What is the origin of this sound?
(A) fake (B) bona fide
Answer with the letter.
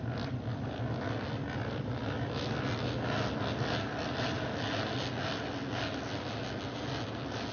B